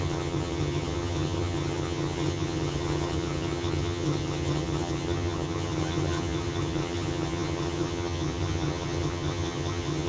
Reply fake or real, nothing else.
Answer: fake